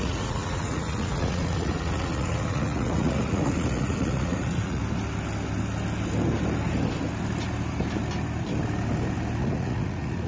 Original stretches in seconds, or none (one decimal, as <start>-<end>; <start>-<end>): 4.8-9.4